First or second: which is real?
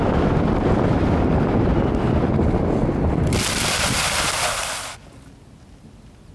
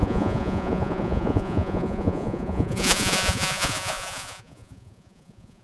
first